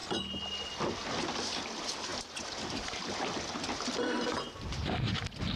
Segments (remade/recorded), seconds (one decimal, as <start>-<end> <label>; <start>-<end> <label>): 0.0-5.6 recorded